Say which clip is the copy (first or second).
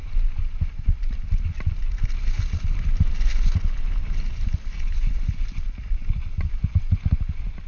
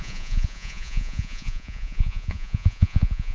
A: second